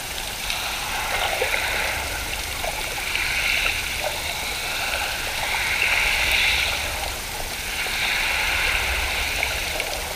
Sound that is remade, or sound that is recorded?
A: recorded